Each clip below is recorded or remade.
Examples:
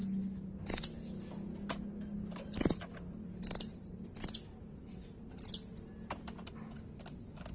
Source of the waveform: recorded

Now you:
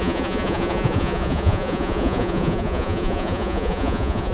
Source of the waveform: remade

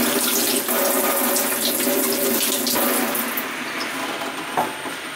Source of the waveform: recorded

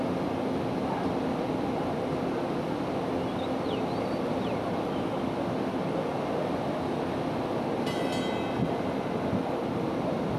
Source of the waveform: recorded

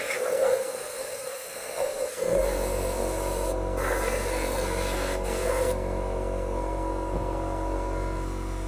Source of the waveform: remade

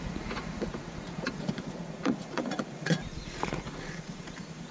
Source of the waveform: remade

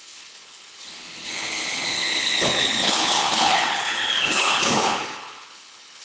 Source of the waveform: remade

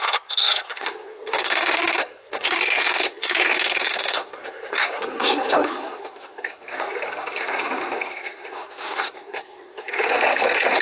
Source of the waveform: remade